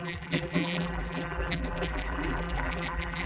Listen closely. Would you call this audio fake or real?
fake